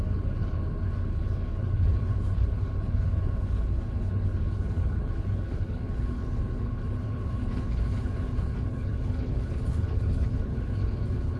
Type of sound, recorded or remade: remade